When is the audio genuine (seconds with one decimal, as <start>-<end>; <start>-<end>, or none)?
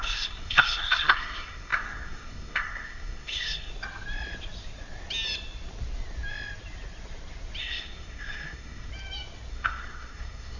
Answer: 3.7-7.6; 8.9-9.5